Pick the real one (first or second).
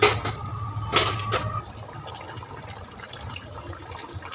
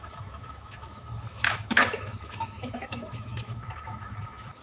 first